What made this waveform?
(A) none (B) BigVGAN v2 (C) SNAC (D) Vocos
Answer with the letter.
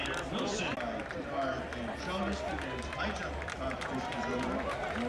A